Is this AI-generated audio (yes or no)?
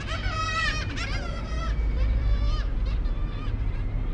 yes